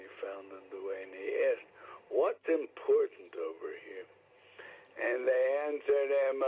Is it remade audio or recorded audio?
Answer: recorded